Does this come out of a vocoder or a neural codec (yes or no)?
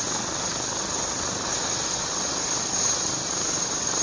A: no